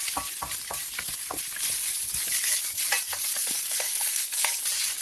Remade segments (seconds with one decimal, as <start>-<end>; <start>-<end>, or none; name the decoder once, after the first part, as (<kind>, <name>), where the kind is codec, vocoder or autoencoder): 3.4-4.6 (codec, SNAC)